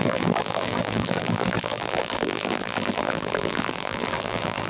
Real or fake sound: fake